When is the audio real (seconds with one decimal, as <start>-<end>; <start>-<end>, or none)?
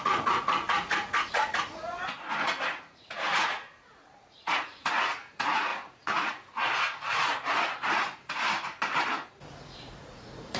8.7-9.5